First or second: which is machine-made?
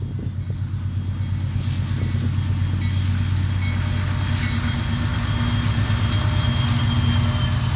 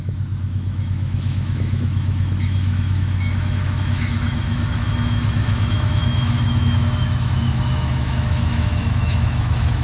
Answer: second